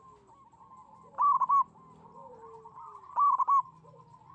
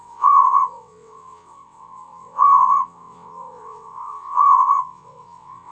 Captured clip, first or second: first